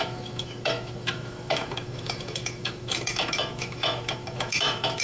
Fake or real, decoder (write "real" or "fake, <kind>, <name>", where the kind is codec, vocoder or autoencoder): fake, autoencoder, DAC-VAE